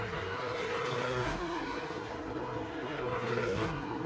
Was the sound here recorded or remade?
remade